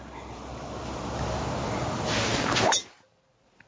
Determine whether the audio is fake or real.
real